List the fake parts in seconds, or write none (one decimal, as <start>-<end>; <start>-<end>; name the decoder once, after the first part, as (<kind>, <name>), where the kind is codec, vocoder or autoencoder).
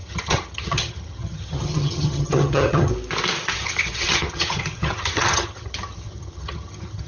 0.0-2.9 (vocoder, HiFi-GAN); 3.5-7.1